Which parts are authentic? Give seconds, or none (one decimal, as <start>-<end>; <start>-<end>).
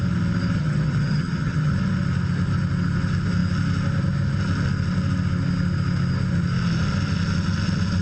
0.0-0.6; 1.7-8.0